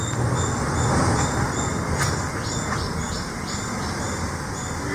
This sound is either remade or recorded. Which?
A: recorded